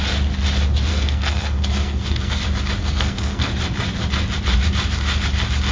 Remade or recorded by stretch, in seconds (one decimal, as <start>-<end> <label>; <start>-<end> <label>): 0.0-0.9 recorded; 0.9-2.4 remade; 2.4-2.8 recorded; 2.8-3.5 remade; 3.5-5.7 recorded